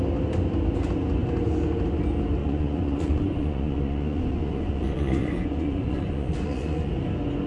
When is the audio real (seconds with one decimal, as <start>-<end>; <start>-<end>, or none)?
0.0-2.4; 6.9-7.5